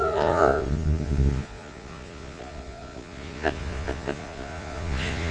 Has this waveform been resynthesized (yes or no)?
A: yes